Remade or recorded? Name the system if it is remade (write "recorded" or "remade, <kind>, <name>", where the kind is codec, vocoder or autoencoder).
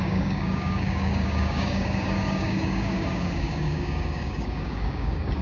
remade, codec, DAC